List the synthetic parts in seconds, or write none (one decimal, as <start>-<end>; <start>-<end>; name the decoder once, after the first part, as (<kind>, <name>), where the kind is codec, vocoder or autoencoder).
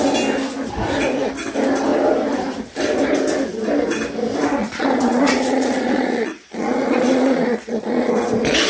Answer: 4.6-8.1 (vocoder, Vocos)